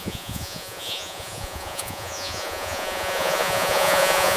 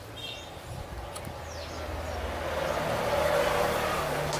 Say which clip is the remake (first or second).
first